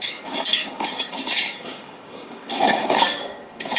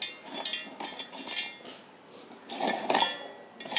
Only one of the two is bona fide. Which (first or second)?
second